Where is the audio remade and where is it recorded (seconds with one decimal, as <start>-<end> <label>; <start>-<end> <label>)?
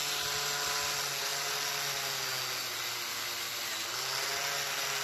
0.0-5.0 recorded